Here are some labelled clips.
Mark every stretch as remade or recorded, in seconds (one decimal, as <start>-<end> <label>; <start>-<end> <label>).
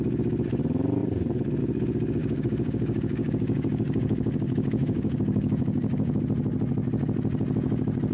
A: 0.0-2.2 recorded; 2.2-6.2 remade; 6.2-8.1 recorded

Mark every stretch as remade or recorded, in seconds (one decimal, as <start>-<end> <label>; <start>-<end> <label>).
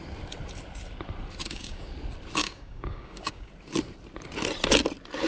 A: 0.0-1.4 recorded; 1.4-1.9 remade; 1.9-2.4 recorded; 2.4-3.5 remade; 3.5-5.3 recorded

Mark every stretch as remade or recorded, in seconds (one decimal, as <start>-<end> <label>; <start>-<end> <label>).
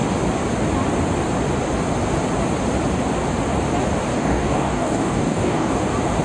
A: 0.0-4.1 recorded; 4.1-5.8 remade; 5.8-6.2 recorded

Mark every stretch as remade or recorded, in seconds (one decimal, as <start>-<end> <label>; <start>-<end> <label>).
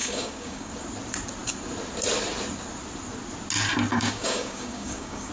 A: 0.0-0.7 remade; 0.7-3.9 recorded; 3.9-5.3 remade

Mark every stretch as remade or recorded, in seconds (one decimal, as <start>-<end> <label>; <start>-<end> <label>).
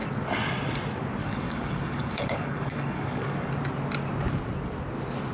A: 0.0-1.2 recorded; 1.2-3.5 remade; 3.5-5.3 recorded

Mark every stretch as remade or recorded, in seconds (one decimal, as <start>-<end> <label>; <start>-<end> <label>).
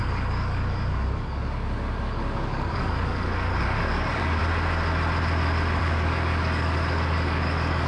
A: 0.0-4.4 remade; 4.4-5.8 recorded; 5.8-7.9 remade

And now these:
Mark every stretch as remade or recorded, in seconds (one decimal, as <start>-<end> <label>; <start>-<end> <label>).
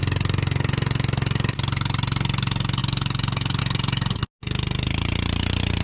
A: 0.0-5.8 recorded